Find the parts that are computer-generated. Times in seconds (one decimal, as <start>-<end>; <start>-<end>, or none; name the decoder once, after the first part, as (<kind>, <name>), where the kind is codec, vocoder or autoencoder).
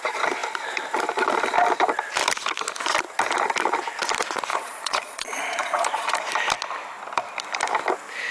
4.5-6.1 (vocoder, Vocos)